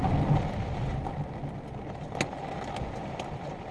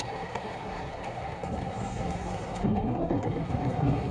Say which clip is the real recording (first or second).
first